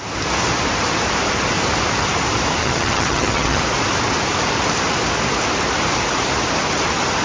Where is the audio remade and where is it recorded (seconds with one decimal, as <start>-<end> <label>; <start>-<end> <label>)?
0.0-2.6 recorded; 2.6-3.6 remade; 3.6-7.2 recorded